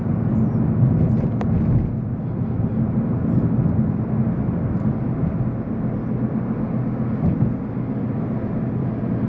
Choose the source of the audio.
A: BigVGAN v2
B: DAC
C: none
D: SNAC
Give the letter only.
C